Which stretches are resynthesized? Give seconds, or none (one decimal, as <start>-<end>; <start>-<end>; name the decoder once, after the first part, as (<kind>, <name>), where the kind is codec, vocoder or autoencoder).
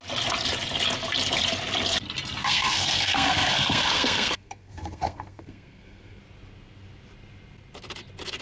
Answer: 2.4-6.2 (codec, SNAC)